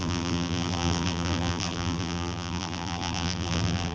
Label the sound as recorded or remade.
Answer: remade